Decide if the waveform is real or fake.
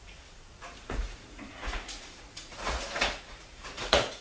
fake